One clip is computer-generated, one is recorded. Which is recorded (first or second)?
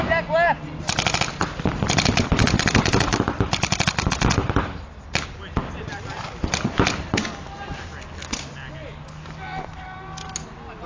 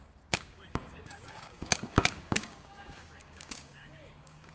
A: first